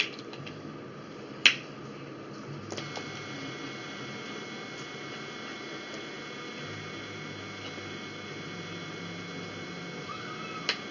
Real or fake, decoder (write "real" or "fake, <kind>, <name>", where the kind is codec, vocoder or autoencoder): real